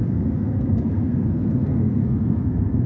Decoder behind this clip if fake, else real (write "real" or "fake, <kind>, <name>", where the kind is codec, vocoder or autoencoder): fake, codec, SNAC